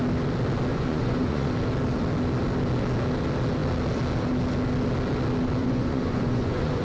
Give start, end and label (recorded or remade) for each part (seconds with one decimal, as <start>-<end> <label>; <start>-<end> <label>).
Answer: 0.0-0.7 recorded; 0.7-1.5 remade; 1.5-5.6 recorded; 5.6-6.8 remade